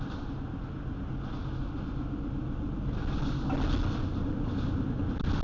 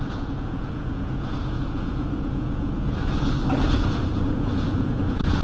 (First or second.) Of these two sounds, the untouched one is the first